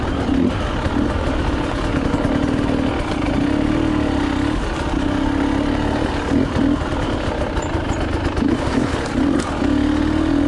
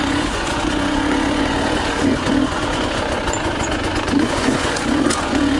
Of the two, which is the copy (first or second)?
second